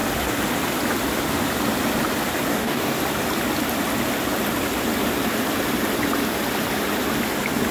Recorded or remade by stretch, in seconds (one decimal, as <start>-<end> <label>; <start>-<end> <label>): 0.0-2.5 recorded; 2.5-3.0 remade; 3.0-7.7 recorded